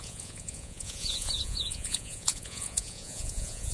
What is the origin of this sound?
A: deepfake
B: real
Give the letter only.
A